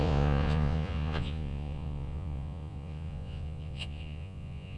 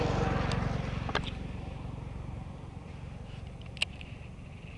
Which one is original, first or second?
second